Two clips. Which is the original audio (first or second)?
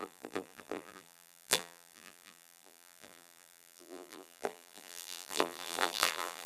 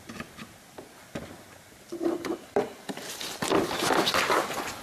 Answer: second